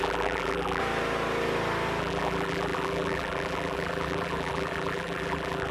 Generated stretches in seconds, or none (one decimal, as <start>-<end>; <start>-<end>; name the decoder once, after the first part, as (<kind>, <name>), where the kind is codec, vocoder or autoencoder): 0.0-0.8 (vocoder, BigVGAN v2); 2.0-5.7